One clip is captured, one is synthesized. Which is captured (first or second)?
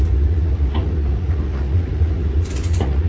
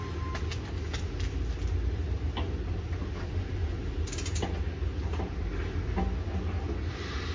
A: second